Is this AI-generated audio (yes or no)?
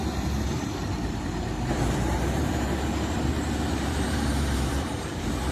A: yes